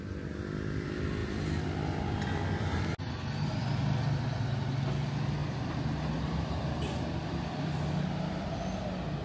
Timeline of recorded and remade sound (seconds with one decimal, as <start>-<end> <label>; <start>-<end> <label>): 0.0-1.2 recorded; 1.2-2.8 remade; 2.8-5.4 recorded; 5.4-8.5 remade; 8.5-9.2 recorded